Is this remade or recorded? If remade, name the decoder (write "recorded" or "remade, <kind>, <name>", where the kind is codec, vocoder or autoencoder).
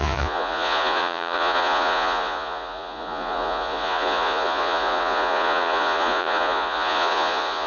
remade, vocoder, Vocos